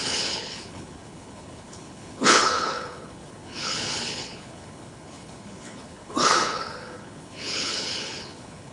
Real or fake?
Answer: fake